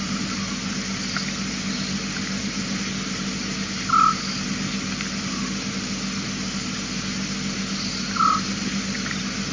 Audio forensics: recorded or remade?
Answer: recorded